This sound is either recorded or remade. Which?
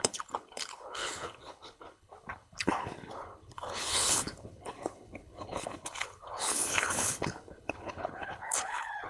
remade